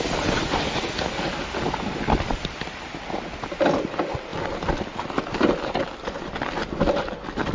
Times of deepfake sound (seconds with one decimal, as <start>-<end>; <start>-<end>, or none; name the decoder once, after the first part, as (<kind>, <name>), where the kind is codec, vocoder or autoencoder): none

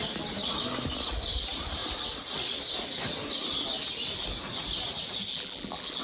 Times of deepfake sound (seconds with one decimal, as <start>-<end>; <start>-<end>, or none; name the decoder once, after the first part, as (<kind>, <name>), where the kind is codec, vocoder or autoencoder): 5.3-6.0 (vocoder, BigVGAN v2)

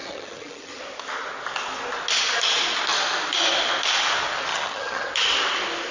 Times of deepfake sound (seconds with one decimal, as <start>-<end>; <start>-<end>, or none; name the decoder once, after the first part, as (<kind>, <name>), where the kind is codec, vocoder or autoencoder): 0.0-0.8 (vocoder, HiFi-GAN); 4.5-5.1

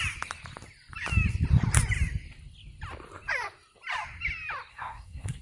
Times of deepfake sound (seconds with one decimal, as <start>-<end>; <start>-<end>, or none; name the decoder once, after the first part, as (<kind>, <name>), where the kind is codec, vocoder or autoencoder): 4.7-5.4 (codec, SNAC)

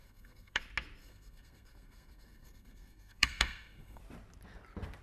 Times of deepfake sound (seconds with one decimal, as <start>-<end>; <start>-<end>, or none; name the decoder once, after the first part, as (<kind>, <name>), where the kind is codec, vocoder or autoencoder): 0.0-0.6 (codec, SNAC); 1.0-4.0

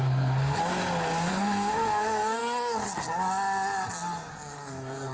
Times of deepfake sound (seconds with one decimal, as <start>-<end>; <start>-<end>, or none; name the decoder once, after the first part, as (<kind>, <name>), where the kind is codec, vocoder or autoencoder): 0.0-0.6 (codec, SNAC); 1.3-2.4; 4.3-5.1

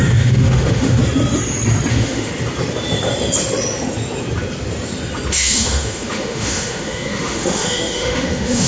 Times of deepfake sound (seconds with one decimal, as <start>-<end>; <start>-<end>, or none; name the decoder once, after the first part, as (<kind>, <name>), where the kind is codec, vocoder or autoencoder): 0.0-1.0 (autoencoder, DAC-VAE); 1.9-2.3; 5.3-8.7

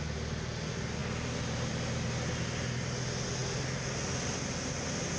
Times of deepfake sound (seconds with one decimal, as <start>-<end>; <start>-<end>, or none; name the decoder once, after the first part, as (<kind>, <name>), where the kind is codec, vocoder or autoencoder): none